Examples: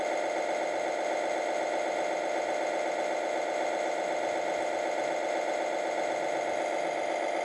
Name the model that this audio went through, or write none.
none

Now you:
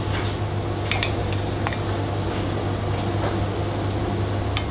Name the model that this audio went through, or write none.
none